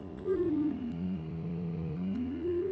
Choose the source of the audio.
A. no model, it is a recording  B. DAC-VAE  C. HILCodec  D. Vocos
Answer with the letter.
D